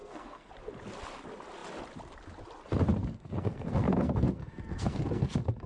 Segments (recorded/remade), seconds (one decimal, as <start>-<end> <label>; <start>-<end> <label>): 0.0-0.5 remade; 0.5-3.0 recorded; 3.0-5.7 remade